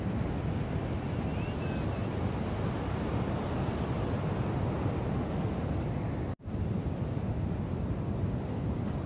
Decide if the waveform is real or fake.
real